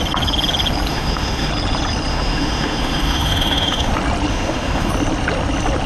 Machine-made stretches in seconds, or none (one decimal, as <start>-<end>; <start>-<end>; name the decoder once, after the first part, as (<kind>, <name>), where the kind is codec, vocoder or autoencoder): 0.9-1.5 (autoencoder, DAC-VAE); 2.1-3.9; 4.3-4.9